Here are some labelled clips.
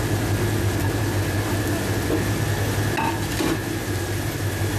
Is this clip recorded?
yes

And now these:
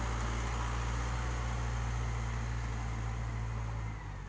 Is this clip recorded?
yes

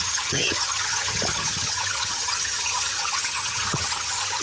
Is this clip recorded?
no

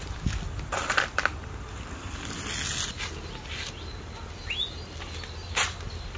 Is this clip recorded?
yes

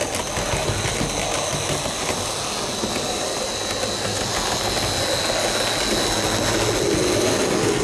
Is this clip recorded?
yes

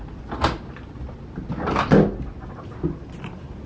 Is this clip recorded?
yes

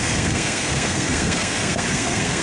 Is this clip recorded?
no